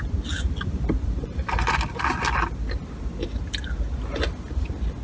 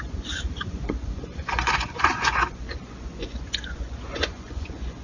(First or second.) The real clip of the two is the first